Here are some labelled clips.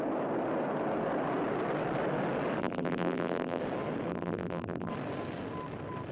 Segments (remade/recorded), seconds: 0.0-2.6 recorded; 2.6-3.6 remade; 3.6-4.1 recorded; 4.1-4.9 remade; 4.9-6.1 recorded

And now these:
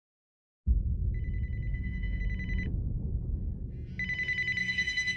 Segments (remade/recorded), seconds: 0.0-1.7 recorded; 1.7-2.2 remade; 2.2-4.6 recorded; 4.6-5.2 remade

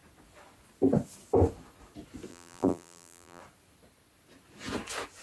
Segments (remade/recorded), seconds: 0.0-2.3 recorded; 2.3-3.4 remade; 3.4-5.2 recorded

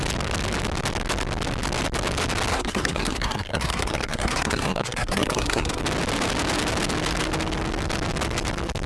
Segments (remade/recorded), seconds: 0.0-2.5 recorded; 2.5-5.8 remade; 5.8-8.9 recorded

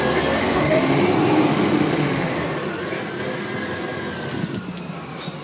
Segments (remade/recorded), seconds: 0.0-0.4 recorded; 0.4-1.0 remade; 1.0-1.5 recorded; 1.5-2.3 remade; 2.3-5.4 recorded

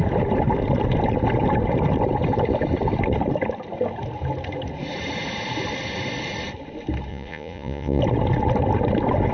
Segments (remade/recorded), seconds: 0.0-7.1 recorded; 7.1-8.0 remade; 8.0-9.3 recorded